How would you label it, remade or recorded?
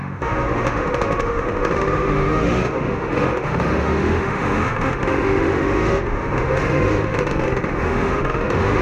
remade